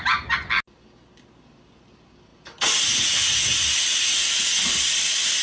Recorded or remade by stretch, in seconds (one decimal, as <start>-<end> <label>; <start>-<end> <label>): 0.0-5.4 recorded